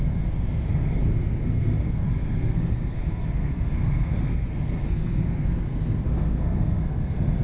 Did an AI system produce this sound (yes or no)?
yes